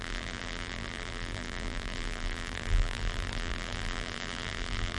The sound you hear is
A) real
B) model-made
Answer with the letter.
B